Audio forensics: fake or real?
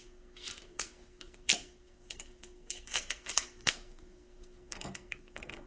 fake